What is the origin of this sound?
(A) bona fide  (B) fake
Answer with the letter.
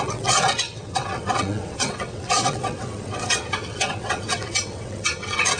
B